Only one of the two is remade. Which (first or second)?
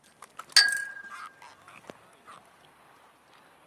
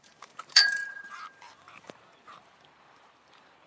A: second